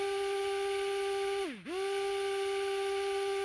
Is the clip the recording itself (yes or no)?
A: yes